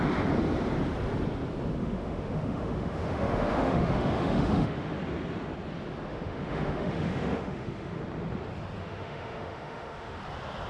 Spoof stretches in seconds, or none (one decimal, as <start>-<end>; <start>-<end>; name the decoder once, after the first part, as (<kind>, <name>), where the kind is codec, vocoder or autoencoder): 1.8-4.9 (autoencoder, DAC-VAE); 6.1-8.0; 8.8-10.2

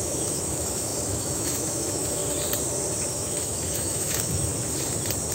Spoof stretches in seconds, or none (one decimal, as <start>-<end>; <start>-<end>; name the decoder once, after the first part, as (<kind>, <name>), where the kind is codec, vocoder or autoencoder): 0.0-2.2 (autoencoder, DAC-VAE); 3.1-4.5

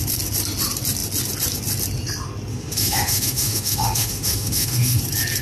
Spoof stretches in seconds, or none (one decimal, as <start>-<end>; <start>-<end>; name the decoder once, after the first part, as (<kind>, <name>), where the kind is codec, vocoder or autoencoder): 2.5-5.0 (autoencoder, DAC-VAE)

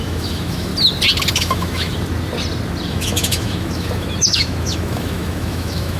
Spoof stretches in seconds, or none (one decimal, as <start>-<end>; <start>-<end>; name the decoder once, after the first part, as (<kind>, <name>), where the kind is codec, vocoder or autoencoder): 0.0-0.7 (autoencoder, DAC-VAE); 1.3-1.9; 2.9-6.0

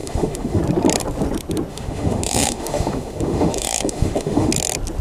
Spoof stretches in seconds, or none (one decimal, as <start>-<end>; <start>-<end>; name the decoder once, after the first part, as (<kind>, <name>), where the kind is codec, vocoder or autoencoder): 0.0-0.6 (autoencoder, DAC-VAE); 1.7-4.5

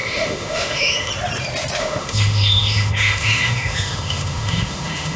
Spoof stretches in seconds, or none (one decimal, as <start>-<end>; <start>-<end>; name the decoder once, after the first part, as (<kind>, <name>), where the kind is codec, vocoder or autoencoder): 0.0-1.1 (autoencoder, DAC-VAE); 1.8-5.2